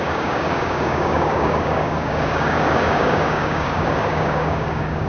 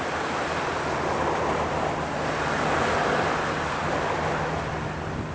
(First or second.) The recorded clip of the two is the second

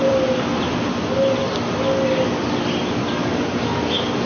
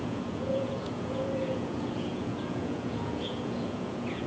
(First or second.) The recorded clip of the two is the first